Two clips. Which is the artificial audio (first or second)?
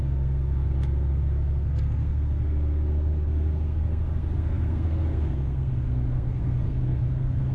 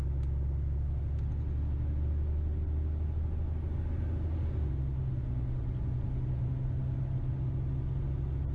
first